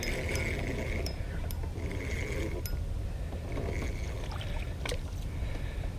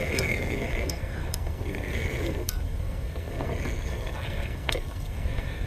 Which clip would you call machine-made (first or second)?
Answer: second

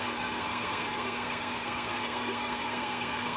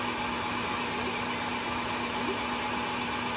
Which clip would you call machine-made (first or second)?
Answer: first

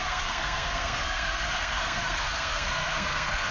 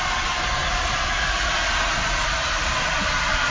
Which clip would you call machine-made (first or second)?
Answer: first